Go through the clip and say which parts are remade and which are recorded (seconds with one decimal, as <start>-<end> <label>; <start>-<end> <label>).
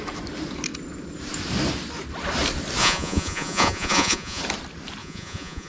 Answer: 0.0-2.8 recorded; 2.8-4.4 remade; 4.4-5.0 recorded; 5.0-5.7 remade